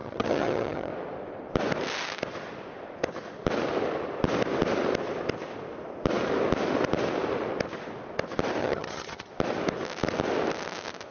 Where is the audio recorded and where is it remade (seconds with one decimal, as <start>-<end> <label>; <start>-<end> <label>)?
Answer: 0.0-0.9 remade; 0.9-8.6 recorded; 8.6-9.3 remade; 9.3-11.1 recorded